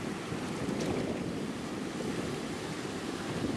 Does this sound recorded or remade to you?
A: recorded